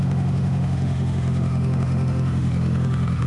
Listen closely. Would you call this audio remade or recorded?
remade